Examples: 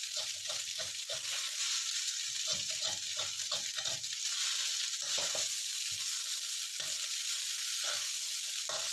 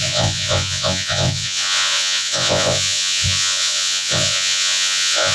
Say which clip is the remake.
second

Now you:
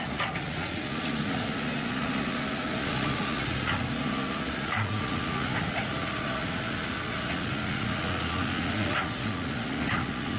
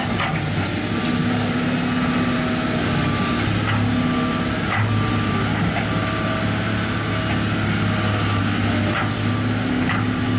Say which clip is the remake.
first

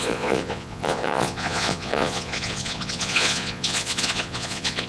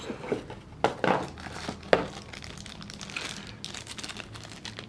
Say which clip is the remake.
first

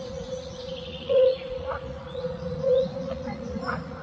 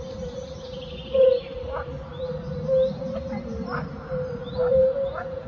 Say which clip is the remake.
first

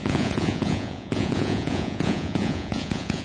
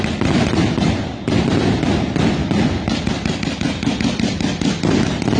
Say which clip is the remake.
first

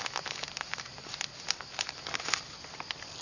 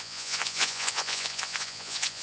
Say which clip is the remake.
second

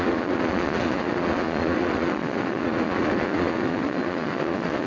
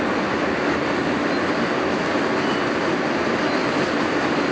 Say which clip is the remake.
first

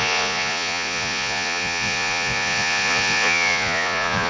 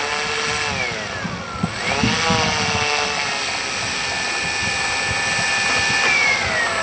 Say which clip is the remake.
first